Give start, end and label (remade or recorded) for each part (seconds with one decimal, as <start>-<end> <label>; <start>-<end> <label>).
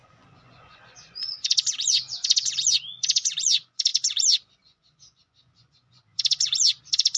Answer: 0.0-7.2 remade